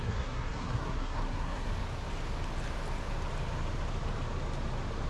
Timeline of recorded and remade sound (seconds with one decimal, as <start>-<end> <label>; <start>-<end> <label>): 0.0-1.7 remade; 1.7-5.1 recorded